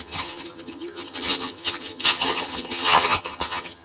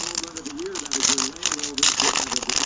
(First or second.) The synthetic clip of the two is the first